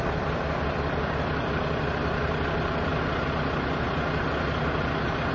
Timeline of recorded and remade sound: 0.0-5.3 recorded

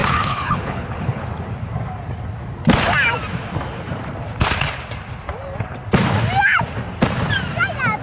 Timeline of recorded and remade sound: 0.0-1.2 remade; 1.2-8.0 recorded

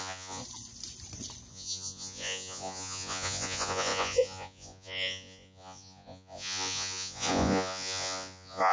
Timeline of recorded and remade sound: 0.0-0.4 remade; 0.4-1.5 recorded; 1.5-8.7 remade

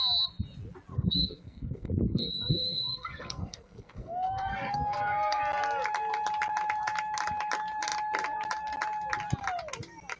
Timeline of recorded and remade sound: 0.0-0.9 recorded; 0.9-5.4 remade; 5.4-10.2 recorded

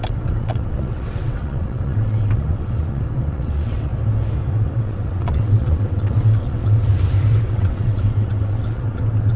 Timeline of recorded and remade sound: 0.0-3.9 remade; 3.9-4.5 recorded; 4.5-6.9 remade; 6.9-7.4 recorded; 7.4-9.4 remade

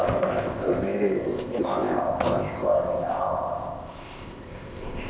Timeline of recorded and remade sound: 0.0-5.1 remade

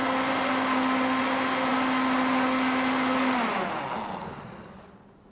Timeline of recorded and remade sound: 0.0-5.3 recorded

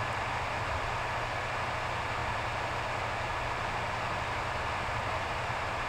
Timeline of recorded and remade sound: 0.0-5.0 recorded; 5.0-5.9 remade